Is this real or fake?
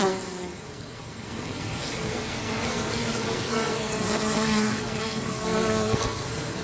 fake